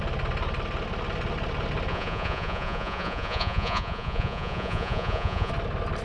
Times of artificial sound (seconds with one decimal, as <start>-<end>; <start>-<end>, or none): 1.9-5.5